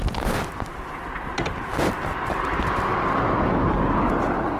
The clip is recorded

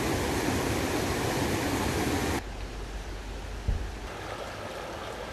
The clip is recorded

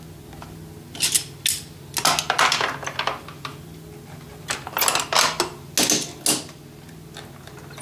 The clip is recorded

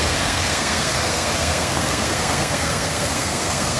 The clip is remade